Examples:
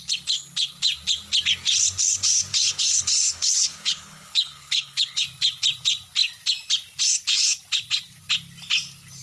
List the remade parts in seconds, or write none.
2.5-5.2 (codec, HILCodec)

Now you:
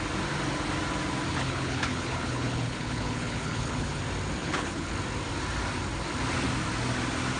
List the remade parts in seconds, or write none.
1.3-4.0 (codec, HILCodec); 4.4-4.9